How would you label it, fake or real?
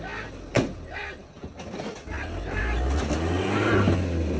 real